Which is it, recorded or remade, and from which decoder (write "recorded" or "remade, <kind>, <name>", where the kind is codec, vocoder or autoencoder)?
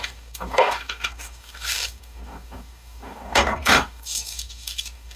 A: remade, codec, DAC